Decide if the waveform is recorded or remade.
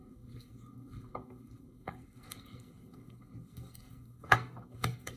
remade